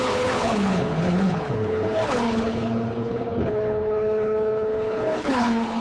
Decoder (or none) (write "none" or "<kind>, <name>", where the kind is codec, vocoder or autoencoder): codec, HILCodec